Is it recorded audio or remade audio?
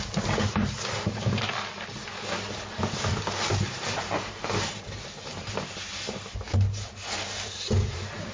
recorded